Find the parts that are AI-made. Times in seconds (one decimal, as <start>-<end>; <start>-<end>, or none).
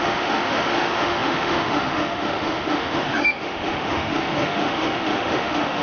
0.0-5.8